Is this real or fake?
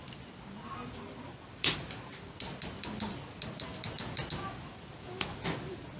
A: real